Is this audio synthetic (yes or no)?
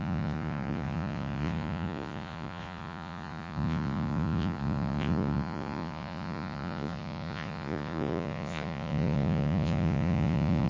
yes